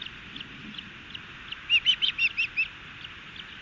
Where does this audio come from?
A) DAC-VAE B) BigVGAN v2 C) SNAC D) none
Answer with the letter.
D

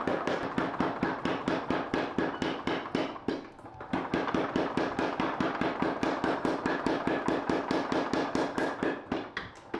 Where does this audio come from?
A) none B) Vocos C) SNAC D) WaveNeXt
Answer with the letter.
A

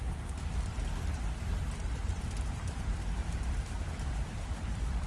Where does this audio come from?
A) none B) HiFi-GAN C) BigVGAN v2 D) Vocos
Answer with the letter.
C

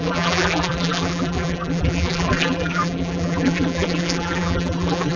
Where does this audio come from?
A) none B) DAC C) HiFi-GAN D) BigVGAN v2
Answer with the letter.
D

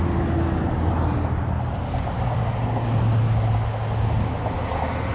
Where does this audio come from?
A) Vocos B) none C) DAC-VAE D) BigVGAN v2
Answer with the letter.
B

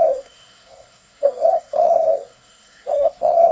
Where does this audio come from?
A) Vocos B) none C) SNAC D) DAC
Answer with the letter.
C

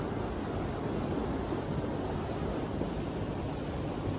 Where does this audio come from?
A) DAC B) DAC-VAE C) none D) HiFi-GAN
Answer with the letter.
C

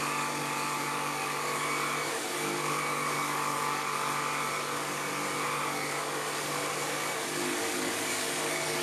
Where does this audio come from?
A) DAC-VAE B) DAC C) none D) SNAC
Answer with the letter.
B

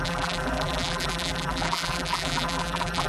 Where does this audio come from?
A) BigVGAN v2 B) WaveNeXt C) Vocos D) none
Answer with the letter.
A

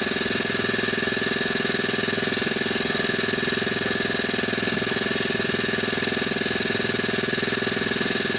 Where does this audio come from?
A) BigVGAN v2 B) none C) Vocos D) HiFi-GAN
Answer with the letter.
B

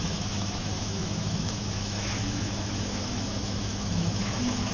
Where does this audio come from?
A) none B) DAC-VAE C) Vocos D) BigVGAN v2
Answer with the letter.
B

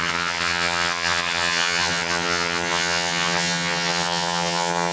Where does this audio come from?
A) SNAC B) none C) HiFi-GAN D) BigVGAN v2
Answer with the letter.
C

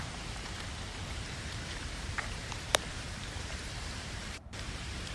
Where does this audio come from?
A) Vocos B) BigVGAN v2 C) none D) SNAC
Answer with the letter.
B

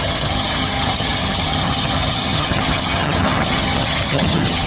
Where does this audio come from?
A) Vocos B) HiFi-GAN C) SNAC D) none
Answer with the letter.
B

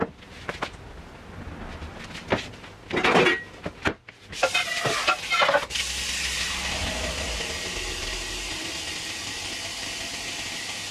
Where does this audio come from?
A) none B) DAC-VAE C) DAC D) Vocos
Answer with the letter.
A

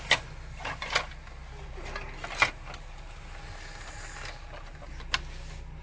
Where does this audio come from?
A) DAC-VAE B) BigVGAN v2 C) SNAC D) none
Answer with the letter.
D